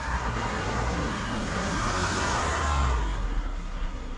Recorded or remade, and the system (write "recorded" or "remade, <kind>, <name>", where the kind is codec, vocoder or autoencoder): remade, codec, SNAC